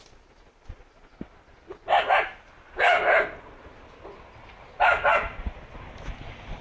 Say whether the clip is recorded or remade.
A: recorded